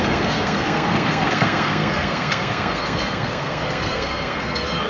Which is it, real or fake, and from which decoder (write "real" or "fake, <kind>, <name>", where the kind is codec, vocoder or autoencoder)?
fake, codec, SNAC